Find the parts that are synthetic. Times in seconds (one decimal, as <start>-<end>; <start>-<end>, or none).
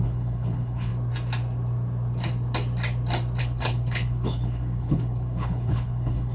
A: 0.0-0.9; 3.4-6.3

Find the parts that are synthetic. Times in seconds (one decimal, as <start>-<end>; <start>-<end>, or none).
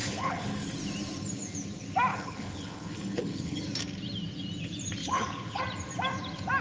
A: 0.0-0.8; 2.1-3.6; 5.0-5.6